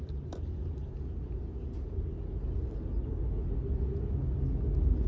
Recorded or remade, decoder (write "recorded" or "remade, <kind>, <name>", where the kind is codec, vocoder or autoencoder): recorded